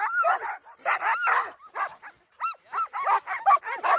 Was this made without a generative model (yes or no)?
yes